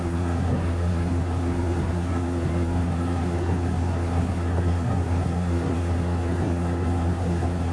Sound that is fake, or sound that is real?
fake